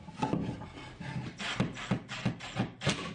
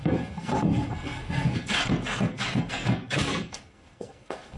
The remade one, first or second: second